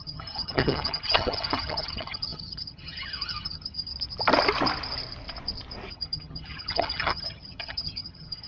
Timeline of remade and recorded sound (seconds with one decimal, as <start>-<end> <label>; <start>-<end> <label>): 0.0-3.9 remade; 3.9-5.9 recorded; 5.9-8.5 remade